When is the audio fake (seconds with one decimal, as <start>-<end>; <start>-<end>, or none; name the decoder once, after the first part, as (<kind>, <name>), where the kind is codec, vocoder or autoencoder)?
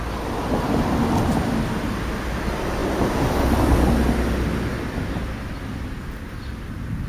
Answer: none